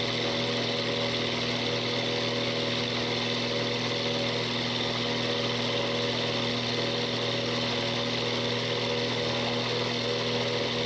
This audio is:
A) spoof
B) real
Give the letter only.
B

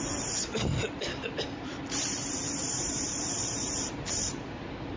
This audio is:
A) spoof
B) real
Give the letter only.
A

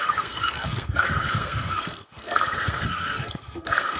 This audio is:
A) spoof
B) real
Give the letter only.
A